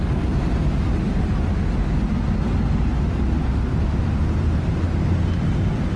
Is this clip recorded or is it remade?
recorded